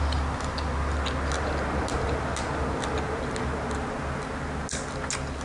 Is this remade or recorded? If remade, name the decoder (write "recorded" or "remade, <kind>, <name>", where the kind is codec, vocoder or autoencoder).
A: recorded